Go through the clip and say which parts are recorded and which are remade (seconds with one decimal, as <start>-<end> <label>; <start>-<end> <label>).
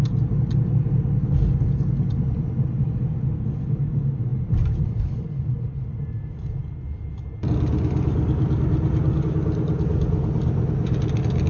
0.0-11.5 recorded